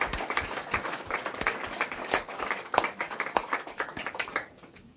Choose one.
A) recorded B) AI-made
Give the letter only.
B